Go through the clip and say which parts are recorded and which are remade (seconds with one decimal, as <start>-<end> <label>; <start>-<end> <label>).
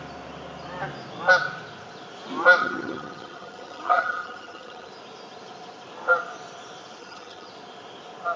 0.0-2.6 recorded; 2.6-4.9 remade; 4.9-7.0 recorded; 7.0-7.5 remade; 7.5-8.4 recorded